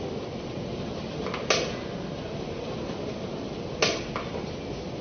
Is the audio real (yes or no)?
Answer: yes